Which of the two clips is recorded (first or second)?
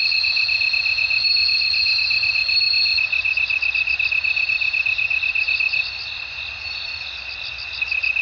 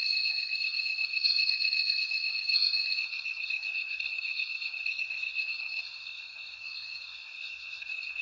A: first